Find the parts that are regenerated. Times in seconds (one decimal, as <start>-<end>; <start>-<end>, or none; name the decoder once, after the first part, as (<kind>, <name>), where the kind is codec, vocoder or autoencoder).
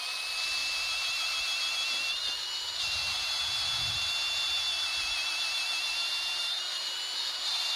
none